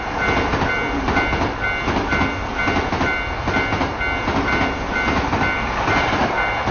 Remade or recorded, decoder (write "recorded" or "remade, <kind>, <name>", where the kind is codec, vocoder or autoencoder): recorded